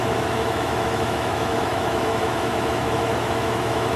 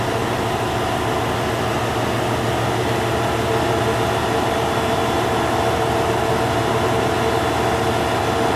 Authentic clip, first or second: second